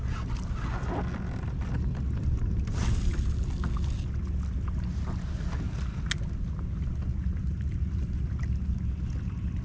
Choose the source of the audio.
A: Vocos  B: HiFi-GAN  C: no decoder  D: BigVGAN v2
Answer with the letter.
C